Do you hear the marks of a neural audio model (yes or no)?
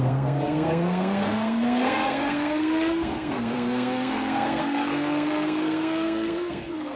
yes